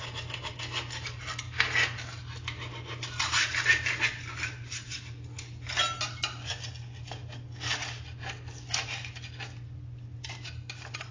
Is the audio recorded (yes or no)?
yes